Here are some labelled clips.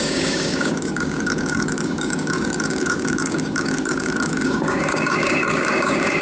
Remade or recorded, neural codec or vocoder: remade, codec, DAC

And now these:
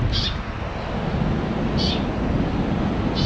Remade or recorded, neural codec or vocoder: recorded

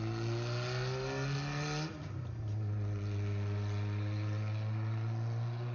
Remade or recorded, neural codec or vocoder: recorded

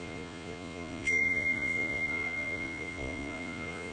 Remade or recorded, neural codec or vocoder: remade, vocoder, Vocos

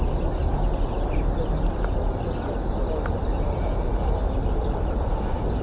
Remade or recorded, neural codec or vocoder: recorded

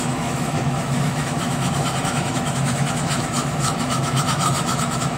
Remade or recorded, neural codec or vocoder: remade, autoencoder, DAC-VAE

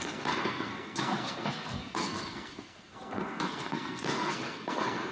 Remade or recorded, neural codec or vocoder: remade, codec, SNAC